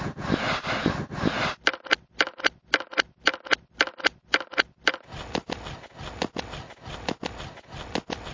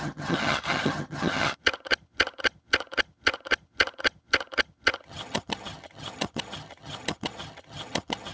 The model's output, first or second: second